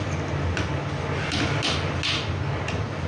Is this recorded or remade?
recorded